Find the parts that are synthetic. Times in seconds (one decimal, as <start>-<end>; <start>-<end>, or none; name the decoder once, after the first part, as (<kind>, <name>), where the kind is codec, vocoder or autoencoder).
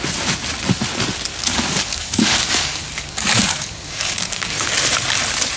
1.3-4.7 (codec, DAC)